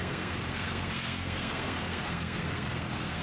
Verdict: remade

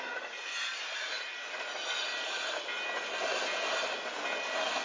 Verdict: recorded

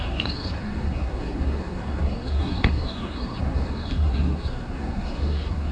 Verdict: remade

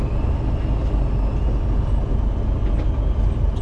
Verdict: recorded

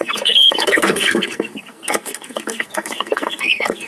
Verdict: remade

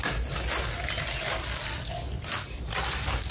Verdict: recorded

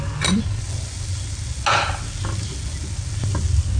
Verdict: recorded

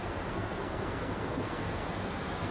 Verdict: remade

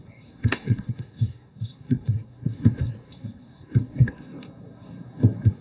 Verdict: remade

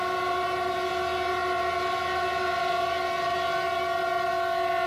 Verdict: recorded